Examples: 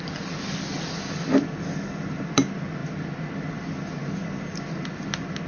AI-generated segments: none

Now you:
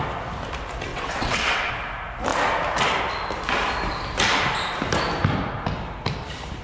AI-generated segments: 0.9-1.7

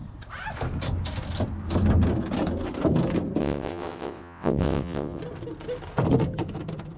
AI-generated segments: 3.4-5.2

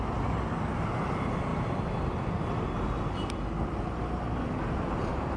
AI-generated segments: none

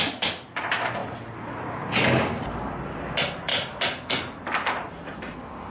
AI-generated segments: none

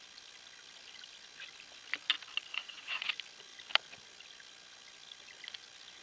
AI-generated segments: 2.5-3.1

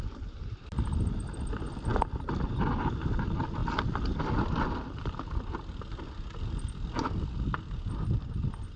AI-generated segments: none

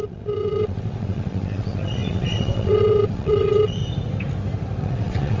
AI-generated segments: 0.0-3.8; 4.8-5.4